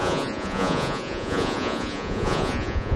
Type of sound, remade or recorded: remade